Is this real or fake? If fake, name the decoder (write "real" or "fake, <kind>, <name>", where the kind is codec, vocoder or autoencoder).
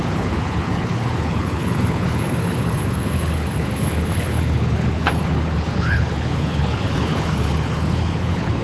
fake, codec, HILCodec